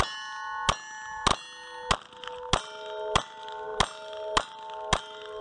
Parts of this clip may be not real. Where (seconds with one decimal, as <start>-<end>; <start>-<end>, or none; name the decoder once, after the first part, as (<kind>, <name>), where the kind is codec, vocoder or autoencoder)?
none